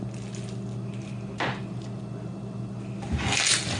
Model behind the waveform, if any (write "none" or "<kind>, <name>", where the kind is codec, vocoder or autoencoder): none